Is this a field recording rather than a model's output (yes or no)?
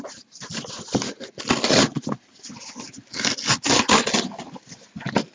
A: yes